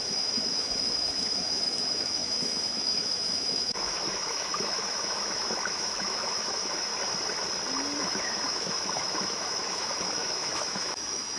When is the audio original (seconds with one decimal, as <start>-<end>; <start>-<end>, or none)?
6.9-8.0